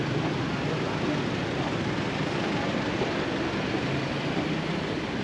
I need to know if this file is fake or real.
fake